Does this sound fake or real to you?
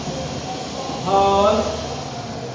real